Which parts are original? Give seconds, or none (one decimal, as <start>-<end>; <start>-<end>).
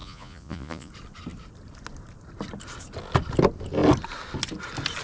0.9-5.0